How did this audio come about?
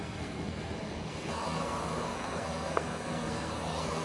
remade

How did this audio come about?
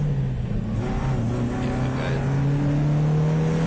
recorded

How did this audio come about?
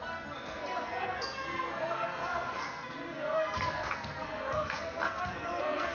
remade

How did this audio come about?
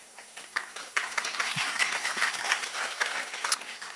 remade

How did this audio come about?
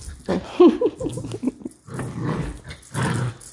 recorded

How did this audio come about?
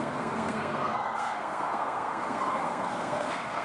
remade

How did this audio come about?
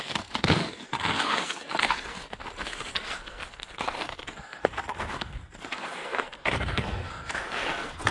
remade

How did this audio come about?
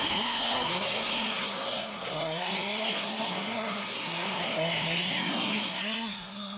remade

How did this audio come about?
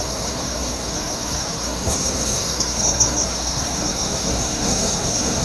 remade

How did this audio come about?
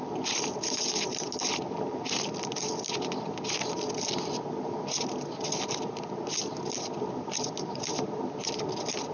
recorded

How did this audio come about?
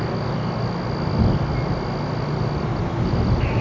recorded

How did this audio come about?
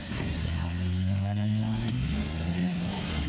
remade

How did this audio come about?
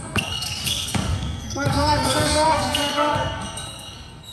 remade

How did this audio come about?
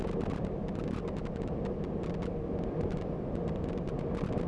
recorded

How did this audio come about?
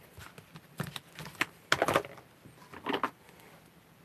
recorded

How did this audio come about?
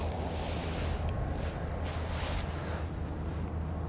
recorded